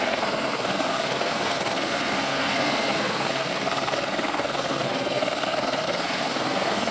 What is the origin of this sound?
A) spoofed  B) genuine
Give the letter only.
A